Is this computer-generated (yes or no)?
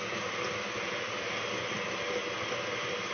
no